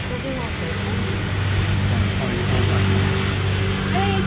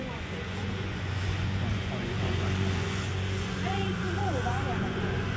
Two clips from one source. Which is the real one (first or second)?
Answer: first